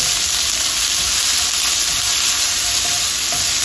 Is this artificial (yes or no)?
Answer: no